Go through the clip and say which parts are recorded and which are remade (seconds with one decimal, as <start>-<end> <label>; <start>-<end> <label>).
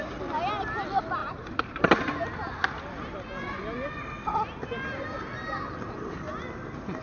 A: 0.0-1.2 recorded; 1.2-1.8 remade; 1.8-7.0 recorded